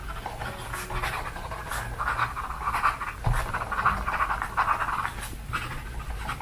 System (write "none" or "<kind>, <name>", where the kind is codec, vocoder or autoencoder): none